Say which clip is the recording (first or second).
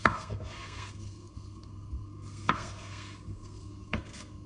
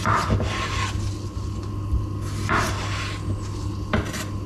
second